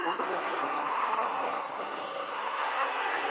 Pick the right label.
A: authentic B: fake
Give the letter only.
B